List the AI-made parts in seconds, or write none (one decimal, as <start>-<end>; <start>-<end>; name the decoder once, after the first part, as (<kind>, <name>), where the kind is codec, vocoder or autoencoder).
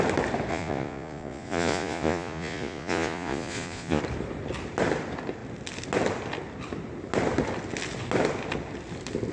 0.5-4.0 (vocoder, Vocos)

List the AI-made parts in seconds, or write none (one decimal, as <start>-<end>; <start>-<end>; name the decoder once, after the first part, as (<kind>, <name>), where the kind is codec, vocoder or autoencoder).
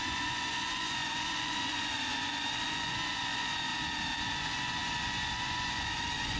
0.0-3.7 (vocoder, Vocos); 4.2-6.4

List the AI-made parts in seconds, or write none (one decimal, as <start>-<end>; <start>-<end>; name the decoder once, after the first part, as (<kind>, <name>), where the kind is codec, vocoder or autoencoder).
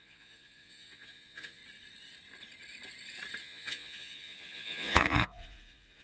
0.0-1.6 (vocoder, Vocos); 3.4-6.0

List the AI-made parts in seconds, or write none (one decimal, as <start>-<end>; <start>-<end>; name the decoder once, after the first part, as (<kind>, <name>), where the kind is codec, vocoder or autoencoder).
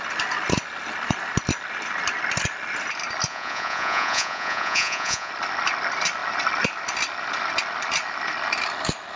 3.3-5.3 (vocoder, Vocos)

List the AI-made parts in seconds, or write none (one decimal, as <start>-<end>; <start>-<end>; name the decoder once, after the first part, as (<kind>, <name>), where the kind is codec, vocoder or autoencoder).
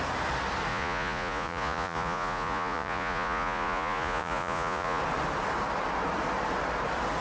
0.7-5.0 (vocoder, Vocos)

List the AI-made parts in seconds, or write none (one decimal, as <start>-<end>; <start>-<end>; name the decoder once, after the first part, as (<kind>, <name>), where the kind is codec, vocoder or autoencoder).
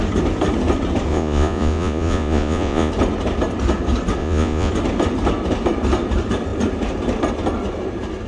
1.1-2.9 (vocoder, Vocos); 4.2-4.7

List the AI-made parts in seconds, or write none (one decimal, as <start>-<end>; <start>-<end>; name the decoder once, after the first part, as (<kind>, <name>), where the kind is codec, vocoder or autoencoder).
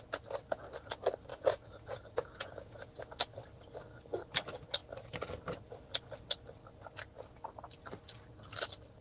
1.3-3.0 (vocoder, Vocos)